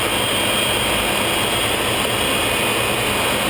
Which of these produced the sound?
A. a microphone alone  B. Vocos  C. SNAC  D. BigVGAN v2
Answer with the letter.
A